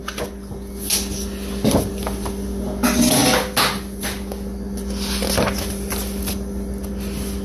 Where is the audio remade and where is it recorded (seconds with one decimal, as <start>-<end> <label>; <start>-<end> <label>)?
0.0-7.4 recorded